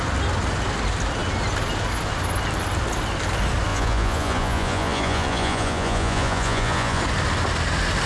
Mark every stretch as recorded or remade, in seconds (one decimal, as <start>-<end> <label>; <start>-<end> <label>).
0.0-3.7 recorded; 3.7-7.0 remade; 7.0-8.1 recorded